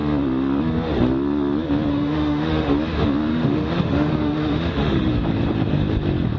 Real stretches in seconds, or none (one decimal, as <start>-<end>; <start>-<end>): 0.0-1.9; 2.7-3.3; 5.1-6.4